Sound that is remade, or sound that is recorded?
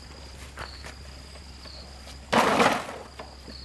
recorded